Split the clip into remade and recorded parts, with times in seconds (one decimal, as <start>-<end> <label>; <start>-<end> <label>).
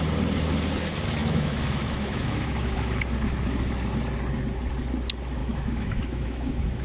0.0-1.2 recorded; 1.2-3.0 remade; 3.0-5.4 recorded; 5.4-6.8 remade